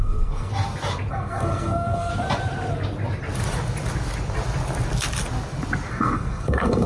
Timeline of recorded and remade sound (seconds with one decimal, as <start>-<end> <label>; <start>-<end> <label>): 0.0-0.5 remade; 0.5-1.1 recorded; 1.1-2.1 remade; 2.1-5.9 recorded; 5.9-6.9 remade